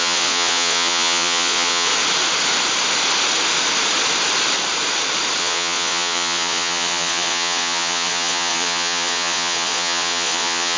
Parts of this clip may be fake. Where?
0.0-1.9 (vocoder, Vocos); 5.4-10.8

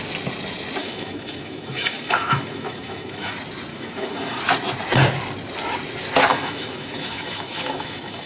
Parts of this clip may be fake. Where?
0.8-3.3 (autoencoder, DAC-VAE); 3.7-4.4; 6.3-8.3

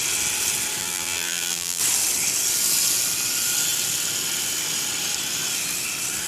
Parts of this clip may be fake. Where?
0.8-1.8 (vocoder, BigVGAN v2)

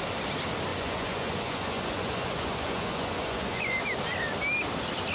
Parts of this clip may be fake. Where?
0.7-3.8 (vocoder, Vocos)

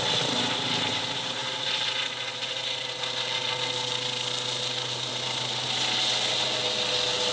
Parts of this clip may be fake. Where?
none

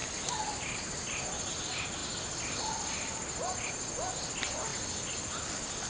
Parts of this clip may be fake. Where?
none

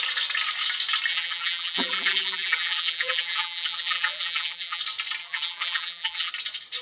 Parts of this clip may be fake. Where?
1.1-4.8 (vocoder, BigVGAN v2); 5.2-6.3